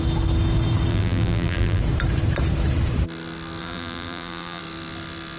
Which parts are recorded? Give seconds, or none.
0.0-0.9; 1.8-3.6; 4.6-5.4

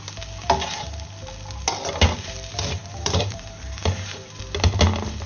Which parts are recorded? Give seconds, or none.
0.0-2.8; 4.4-5.3

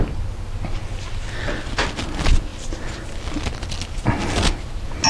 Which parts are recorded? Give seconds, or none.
0.0-5.1

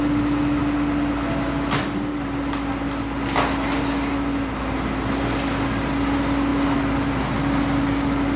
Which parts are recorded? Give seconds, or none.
0.0-8.4